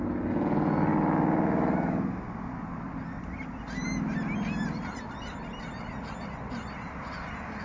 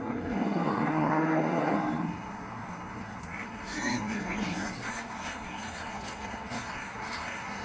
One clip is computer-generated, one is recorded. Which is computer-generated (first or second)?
second